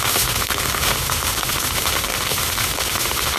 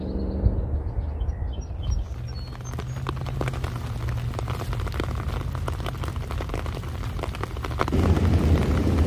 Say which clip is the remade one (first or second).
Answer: first